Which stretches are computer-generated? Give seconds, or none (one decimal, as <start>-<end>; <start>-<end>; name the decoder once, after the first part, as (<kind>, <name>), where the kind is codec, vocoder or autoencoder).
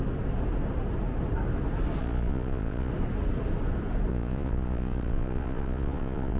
2.0-2.9 (vocoder, Vocos); 4.1-6.4